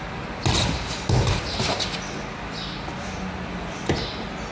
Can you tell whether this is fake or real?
real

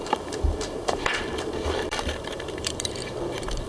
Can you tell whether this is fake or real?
fake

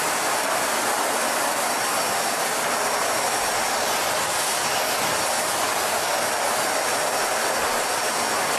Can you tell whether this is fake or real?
real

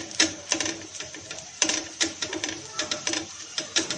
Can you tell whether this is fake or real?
fake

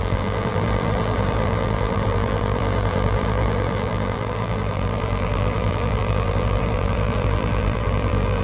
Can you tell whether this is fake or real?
fake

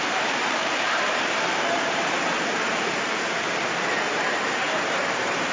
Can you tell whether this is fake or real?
fake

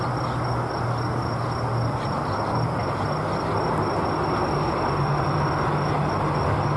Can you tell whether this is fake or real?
real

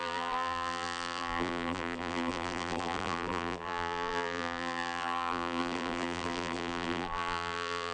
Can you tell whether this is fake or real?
fake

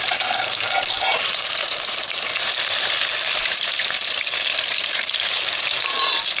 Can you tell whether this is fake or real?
fake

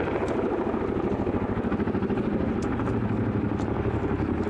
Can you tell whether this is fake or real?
real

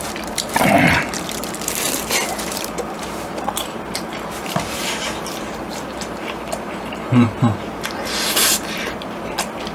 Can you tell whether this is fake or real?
fake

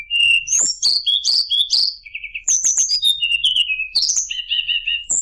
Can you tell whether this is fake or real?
fake